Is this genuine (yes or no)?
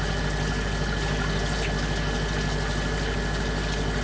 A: yes